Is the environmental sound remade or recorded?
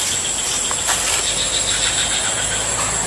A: remade